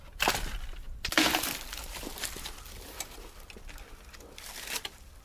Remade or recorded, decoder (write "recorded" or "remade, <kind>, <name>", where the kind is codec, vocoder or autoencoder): recorded